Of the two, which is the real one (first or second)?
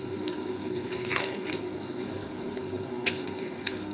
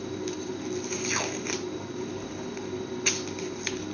second